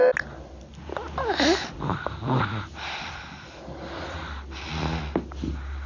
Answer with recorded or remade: recorded